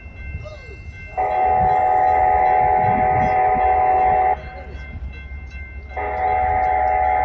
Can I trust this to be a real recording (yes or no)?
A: yes